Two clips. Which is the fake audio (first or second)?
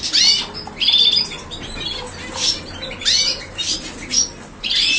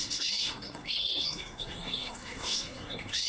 second